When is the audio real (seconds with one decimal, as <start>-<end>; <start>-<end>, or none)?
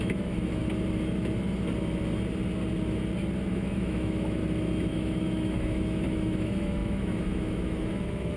0.6-3.5; 4.4-4.9